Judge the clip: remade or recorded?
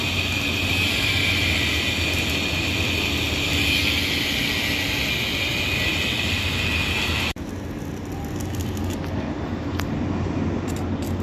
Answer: recorded